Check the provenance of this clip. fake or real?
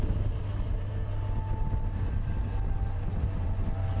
real